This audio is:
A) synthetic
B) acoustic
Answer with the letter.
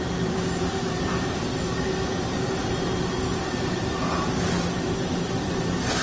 B